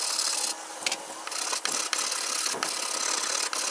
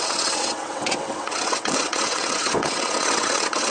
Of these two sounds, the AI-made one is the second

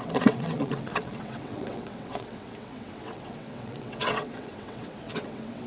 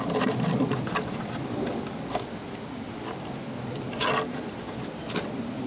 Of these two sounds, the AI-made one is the first